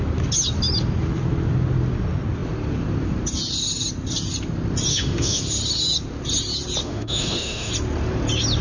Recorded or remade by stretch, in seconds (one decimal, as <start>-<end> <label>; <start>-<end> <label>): 0.0-4.9 recorded; 4.9-5.4 remade; 5.4-6.8 recorded; 6.8-7.7 remade; 7.7-8.6 recorded